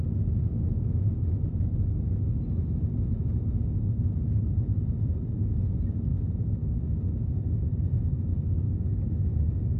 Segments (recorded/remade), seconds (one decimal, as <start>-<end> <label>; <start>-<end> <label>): 0.0-4.7 recorded; 4.7-5.3 remade; 5.3-9.8 recorded